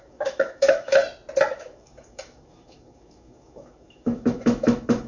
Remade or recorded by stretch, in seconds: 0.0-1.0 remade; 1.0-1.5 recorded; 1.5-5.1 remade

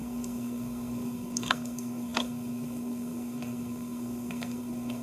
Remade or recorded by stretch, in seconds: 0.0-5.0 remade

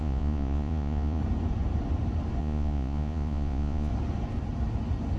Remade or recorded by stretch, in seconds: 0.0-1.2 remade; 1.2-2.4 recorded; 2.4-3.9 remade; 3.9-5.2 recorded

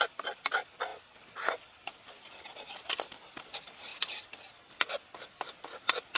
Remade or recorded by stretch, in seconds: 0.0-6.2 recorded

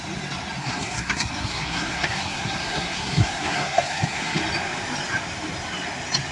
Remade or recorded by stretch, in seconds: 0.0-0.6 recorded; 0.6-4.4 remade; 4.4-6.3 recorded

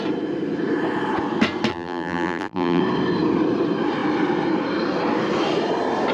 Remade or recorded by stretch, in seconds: 0.0-1.7 recorded; 1.7-2.8 remade; 2.8-6.1 recorded

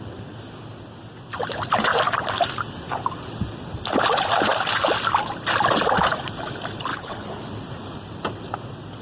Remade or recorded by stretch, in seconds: 0.0-6.9 recorded; 6.9-7.4 remade; 7.4-9.0 recorded

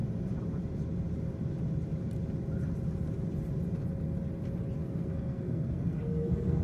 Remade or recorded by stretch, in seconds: 0.0-4.8 recorded; 4.8-6.6 remade